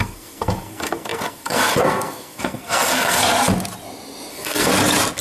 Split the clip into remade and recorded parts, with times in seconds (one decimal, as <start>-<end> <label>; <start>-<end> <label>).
0.0-3.2 remade; 3.2-4.3 recorded; 4.3-4.7 remade; 4.7-5.2 recorded